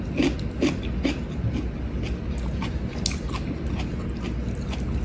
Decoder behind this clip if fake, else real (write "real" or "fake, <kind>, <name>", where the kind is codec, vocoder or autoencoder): real